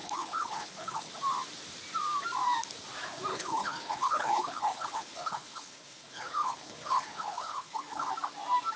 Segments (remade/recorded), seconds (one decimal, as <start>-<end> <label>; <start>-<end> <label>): 0.0-1.1 remade; 1.1-3.3 recorded; 3.3-8.1 remade; 8.1-8.8 recorded